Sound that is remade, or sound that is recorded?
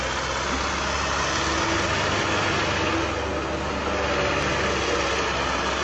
recorded